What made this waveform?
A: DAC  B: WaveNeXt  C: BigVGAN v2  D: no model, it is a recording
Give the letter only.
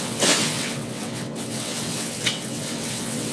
B